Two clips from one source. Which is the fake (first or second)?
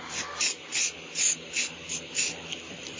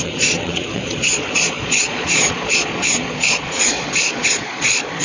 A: second